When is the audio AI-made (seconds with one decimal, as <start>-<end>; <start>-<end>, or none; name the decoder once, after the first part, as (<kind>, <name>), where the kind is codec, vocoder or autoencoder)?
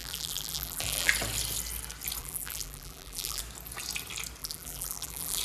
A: 0.0-1.1 (vocoder, BigVGAN v2); 2.2-3.4; 4.4-5.4